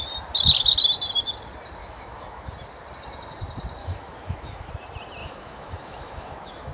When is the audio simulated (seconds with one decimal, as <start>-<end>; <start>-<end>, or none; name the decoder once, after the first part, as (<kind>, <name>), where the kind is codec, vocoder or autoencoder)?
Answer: 1.8-2.5 (autoencoder, DAC-VAE); 3.8-4.7; 5.2-6.7